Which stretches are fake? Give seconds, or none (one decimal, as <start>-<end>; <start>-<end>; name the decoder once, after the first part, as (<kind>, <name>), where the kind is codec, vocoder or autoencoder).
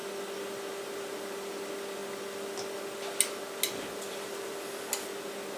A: none